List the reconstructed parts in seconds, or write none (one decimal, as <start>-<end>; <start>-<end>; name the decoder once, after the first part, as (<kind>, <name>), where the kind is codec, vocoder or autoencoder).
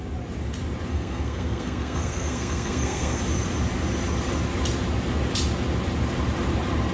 0.9-3.2 (codec, SNAC)